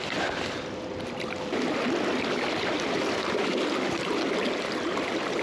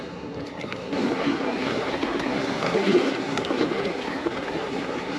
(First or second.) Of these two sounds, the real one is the first